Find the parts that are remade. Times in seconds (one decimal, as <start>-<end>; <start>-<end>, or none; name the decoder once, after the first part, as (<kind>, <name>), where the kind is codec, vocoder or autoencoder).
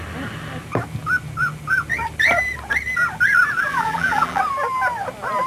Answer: 3.7-4.4 (vocoder, BigVGAN v2)